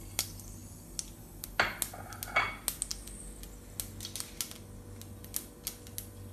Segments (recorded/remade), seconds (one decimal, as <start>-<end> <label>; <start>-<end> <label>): 0.0-6.3 recorded